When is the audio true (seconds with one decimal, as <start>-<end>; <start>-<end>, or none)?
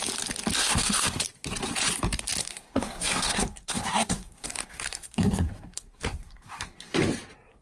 0.0-0.6; 1.2-2.4; 7.0-7.6